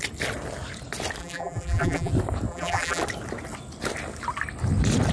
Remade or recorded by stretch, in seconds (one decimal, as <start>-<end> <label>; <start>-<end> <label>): 0.0-1.2 recorded; 1.2-2.1 remade; 2.1-2.5 recorded; 2.5-3.0 remade; 3.0-5.1 recorded